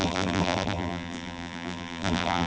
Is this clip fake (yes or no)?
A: yes